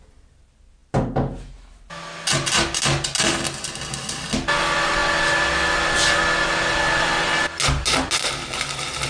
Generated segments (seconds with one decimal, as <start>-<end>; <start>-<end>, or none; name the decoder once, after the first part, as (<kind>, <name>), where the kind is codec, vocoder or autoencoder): none